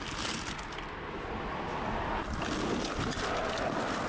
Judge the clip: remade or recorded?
recorded